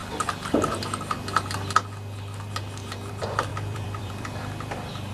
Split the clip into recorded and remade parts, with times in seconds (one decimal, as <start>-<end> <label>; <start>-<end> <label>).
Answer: 0.0-3.1 recorded; 3.1-5.1 remade